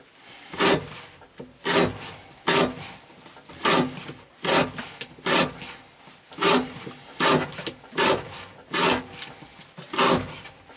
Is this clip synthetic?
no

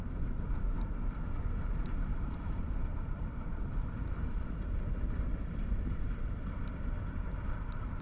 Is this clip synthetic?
yes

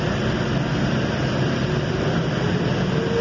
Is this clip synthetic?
no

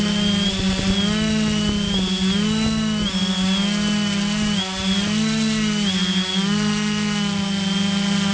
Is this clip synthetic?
no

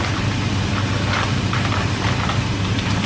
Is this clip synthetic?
no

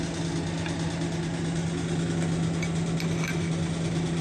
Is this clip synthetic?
no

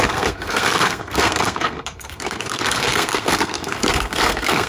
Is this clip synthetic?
yes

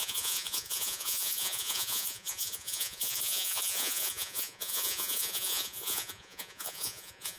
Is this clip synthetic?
yes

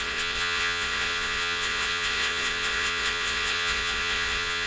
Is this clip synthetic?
yes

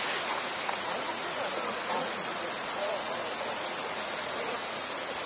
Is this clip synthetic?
yes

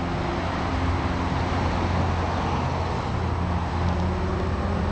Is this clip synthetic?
no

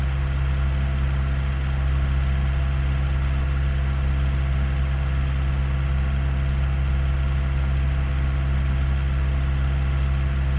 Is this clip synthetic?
no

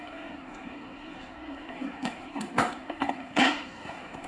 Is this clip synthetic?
yes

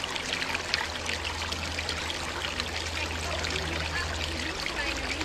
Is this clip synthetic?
no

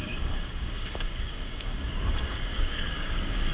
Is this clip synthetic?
yes